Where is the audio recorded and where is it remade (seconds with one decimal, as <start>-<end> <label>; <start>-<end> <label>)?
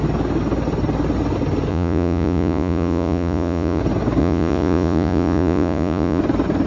0.0-1.7 recorded; 1.7-3.8 remade; 3.8-4.2 recorded; 4.2-6.2 remade; 6.2-6.7 recorded